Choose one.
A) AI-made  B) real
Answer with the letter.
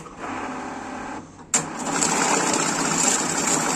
B